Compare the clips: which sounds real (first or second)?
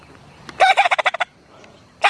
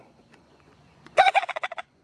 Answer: first